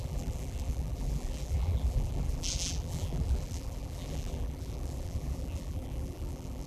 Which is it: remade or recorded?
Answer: remade